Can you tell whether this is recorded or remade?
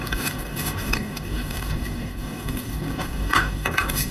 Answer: remade